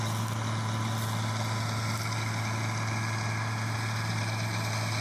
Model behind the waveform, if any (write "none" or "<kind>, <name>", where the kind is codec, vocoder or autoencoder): none